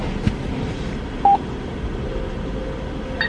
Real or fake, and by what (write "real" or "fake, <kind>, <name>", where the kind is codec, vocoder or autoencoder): real